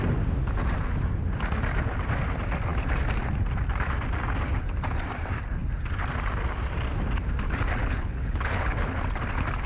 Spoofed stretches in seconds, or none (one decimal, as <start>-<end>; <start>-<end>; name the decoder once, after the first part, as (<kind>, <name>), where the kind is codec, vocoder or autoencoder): 7.8-9.0 (codec, HILCodec)